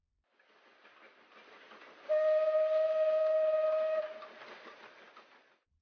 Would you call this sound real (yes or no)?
yes